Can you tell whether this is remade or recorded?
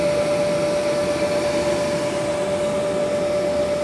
recorded